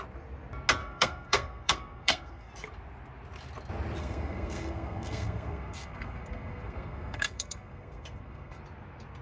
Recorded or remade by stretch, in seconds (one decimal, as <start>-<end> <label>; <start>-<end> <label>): 0.0-0.8 recorded; 0.8-2.5 remade; 2.5-4.0 recorded; 4.0-8.6 remade; 8.6-9.2 recorded